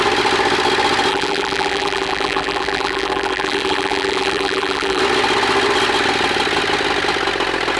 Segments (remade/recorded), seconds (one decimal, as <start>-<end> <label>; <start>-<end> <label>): 0.0-1.1 recorded; 1.1-5.0 remade; 5.0-7.8 recorded